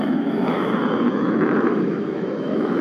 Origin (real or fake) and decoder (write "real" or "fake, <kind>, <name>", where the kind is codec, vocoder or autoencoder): fake, autoencoder, DAC-VAE